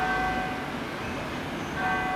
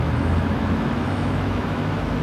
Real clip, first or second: first